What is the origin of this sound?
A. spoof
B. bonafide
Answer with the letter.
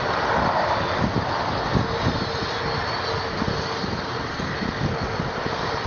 B